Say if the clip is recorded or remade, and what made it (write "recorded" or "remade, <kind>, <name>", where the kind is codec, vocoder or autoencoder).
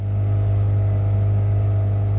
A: recorded